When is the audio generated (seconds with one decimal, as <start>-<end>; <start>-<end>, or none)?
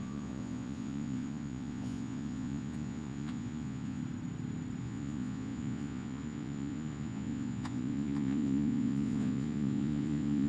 0.0-4.0; 4.8-10.5